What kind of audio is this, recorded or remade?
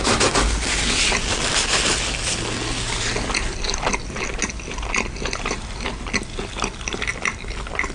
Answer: recorded